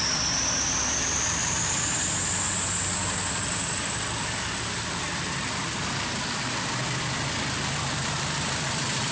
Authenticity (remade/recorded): recorded